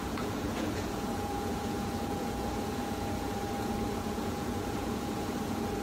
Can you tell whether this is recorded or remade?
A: remade